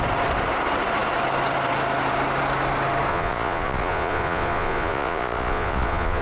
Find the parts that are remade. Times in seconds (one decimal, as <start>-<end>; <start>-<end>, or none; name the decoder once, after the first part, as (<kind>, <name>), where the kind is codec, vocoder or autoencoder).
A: 3.1-6.2 (vocoder, Vocos)